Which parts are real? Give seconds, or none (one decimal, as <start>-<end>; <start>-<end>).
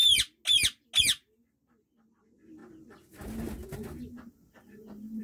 0.0-5.2